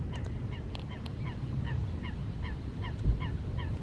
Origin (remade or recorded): recorded